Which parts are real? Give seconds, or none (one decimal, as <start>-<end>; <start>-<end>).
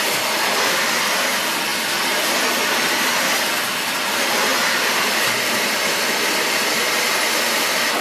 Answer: none